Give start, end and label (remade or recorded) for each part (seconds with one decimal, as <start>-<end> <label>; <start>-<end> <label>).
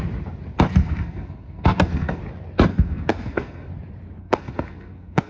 0.0-0.8 recorded; 0.8-2.2 remade; 2.2-2.7 recorded; 2.7-3.7 remade; 3.7-4.2 recorded; 4.2-5.3 remade